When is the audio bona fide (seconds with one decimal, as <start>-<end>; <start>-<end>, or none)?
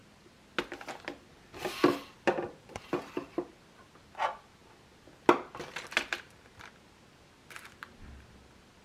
0.0-8.8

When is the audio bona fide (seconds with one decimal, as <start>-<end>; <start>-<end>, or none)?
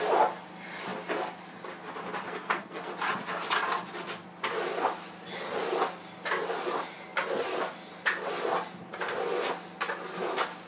0.0-2.2; 2.9-10.7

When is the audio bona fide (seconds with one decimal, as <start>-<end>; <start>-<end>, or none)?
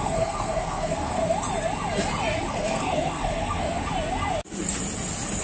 1.2-2.5; 3.8-5.4